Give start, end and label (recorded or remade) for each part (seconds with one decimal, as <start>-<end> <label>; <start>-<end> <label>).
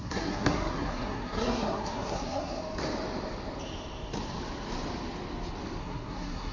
0.0-2.6 remade; 2.6-5.8 recorded; 5.8-6.5 remade